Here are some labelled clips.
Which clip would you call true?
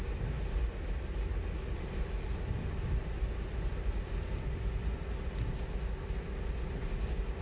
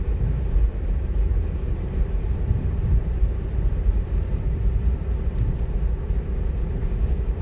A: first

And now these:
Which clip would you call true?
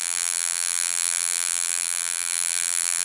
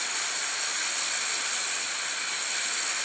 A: second